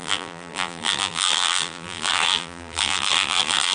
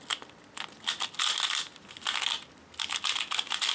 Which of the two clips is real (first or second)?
second